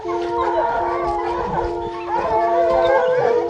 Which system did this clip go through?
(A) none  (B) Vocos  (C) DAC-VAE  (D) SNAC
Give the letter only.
A